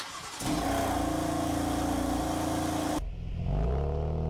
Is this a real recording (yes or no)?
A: yes